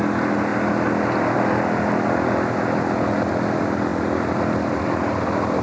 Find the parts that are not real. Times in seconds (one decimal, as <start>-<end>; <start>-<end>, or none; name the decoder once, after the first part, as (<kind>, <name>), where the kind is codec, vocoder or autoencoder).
3.9-4.8 (vocoder, BigVGAN v2)